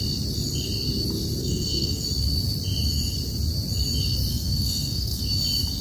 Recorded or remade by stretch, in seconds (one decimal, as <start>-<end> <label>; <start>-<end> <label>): 0.0-1.4 recorded; 1.4-2.0 remade; 2.0-4.3 recorded; 4.3-5.2 remade; 5.2-5.8 recorded